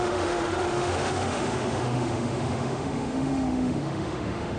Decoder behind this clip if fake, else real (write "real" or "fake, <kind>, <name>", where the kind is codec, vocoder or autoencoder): fake, autoencoder, DAC-VAE